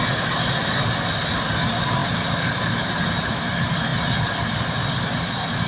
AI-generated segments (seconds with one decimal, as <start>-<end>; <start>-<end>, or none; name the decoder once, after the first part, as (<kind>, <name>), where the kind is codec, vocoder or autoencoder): none